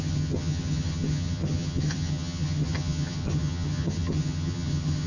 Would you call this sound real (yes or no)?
no